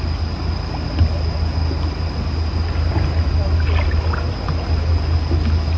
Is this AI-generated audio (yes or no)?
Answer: no